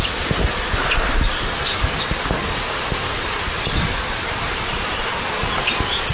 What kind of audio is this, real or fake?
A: fake